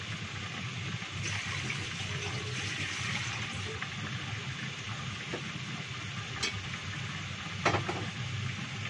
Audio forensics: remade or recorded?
recorded